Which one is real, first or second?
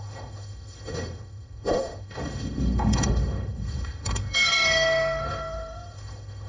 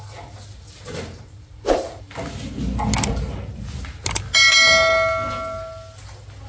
second